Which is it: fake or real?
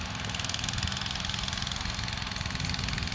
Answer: real